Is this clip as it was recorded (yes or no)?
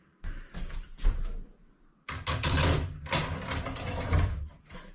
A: yes